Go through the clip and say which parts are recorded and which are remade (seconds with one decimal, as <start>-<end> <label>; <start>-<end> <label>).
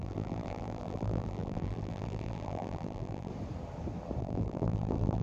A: 0.0-3.3 remade; 3.3-4.2 recorded; 4.2-5.2 remade